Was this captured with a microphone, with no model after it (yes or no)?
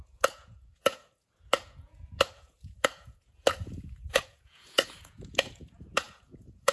no